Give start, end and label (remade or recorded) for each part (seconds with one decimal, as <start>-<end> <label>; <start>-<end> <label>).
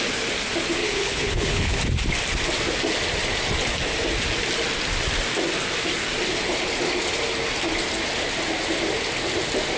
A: 0.0-0.8 recorded; 0.8-1.8 remade; 1.8-9.8 recorded